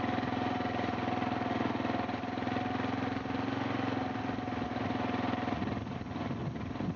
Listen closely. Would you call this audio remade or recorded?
recorded